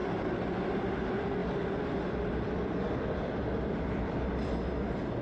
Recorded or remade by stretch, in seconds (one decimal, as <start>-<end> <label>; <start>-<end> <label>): 0.0-5.2 remade